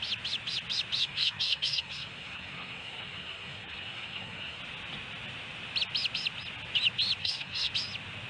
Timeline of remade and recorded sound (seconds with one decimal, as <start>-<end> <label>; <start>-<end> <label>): 0.0-1.0 recorded; 1.0-4.6 remade; 4.6-7.2 recorded; 7.2-7.7 remade; 7.7-8.3 recorded